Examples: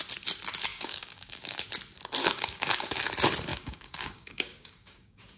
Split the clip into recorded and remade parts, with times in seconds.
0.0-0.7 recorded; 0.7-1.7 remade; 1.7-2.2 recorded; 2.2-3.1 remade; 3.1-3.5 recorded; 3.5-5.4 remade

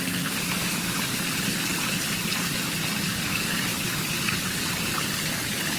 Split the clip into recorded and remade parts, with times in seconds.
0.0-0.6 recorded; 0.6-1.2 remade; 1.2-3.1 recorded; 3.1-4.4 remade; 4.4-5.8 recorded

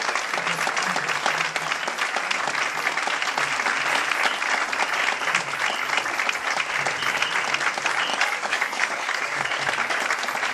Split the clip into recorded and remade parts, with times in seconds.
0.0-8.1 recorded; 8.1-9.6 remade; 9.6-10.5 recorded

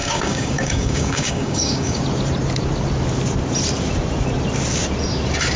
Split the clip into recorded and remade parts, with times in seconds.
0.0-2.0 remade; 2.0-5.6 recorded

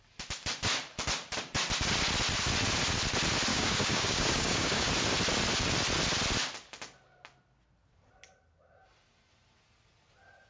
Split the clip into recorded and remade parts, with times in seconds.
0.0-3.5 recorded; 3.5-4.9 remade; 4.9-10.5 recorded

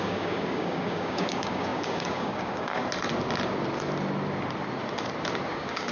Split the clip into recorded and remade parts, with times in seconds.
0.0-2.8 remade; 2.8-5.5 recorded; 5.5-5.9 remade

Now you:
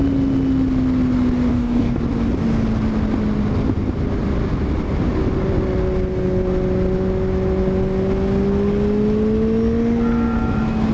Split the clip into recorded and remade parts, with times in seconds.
0.0-1.5 recorded; 1.5-2.0 remade; 2.0-10.9 recorded